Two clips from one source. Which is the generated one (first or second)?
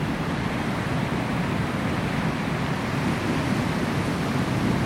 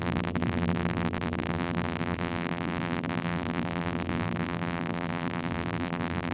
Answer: second